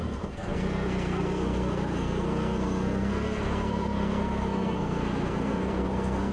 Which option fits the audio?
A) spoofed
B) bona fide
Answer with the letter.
A